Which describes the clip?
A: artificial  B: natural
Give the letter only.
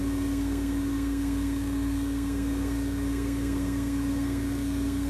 A